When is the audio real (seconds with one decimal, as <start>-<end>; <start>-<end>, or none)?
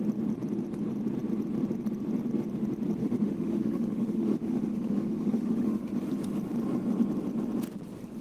0.0-3.0; 5.9-8.2